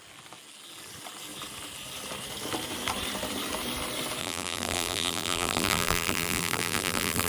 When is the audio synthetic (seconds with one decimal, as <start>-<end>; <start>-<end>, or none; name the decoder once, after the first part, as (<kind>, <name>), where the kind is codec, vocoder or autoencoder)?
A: 4.2-7.3 (vocoder, BigVGAN v2)